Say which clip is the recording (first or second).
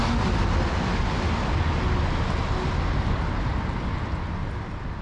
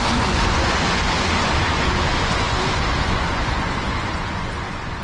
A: first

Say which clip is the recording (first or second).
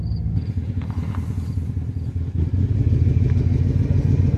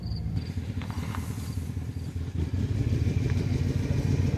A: first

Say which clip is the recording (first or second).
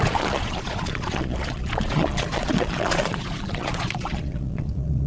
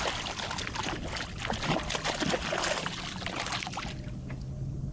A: second